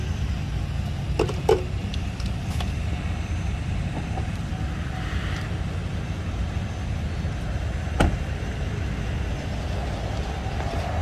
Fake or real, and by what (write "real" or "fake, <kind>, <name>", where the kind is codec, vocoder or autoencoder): real